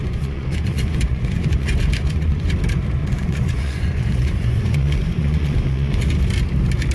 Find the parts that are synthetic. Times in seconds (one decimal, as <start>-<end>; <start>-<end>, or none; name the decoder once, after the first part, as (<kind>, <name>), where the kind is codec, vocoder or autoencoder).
0.0-2.6 (vocoder, Vocos); 3.0-6.0